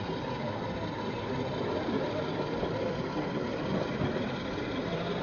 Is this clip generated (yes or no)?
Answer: no